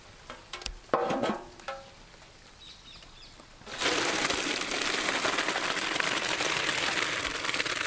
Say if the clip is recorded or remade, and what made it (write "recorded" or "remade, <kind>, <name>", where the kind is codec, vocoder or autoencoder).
recorded